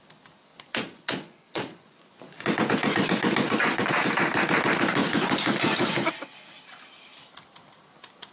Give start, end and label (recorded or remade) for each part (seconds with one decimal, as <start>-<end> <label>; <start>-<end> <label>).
0.0-0.5 recorded; 0.5-3.9 remade; 3.9-5.0 recorded; 5.0-6.1 remade; 6.1-8.3 recorded